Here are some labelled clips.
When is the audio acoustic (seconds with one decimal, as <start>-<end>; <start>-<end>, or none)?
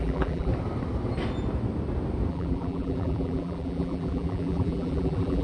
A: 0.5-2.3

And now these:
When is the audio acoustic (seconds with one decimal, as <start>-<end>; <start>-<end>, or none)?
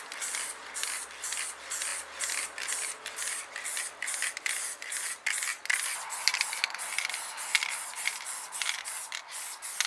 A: 0.0-9.9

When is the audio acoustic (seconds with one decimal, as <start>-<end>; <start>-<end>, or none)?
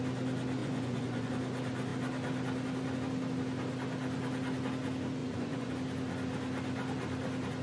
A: 0.0-0.6; 1.3-5.2; 5.7-7.6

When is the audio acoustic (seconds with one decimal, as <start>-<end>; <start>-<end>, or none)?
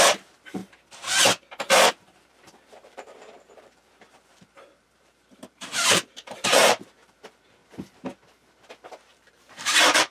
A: 0.6-1.9; 7.6-8.9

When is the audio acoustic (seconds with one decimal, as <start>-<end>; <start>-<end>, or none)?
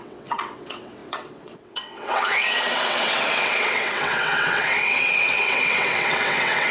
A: none